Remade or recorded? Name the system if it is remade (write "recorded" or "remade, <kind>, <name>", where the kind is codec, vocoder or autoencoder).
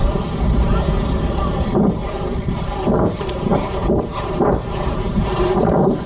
remade, vocoder, BigVGAN v2